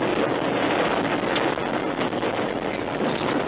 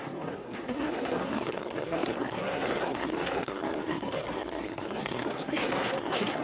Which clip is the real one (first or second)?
first